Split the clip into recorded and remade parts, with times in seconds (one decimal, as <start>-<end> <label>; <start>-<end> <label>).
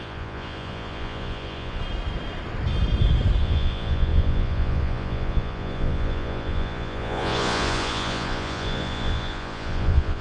0.0-1.8 remade; 1.8-3.4 recorded; 3.4-10.2 remade